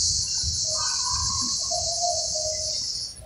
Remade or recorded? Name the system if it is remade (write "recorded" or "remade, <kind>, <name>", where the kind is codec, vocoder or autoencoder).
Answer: recorded